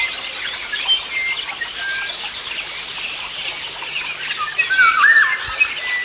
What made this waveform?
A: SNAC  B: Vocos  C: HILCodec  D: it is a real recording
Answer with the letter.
D